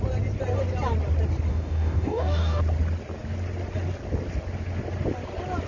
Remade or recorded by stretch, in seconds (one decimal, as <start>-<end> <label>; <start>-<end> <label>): 0.0-1.5 recorded; 1.5-2.6 remade; 2.6-5.7 recorded